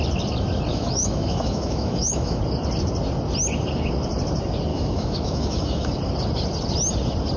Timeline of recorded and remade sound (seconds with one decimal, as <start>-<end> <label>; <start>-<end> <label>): 0.0-0.7 recorded; 0.7-2.4 remade; 2.4-4.7 recorded; 4.7-5.9 remade; 5.9-7.4 recorded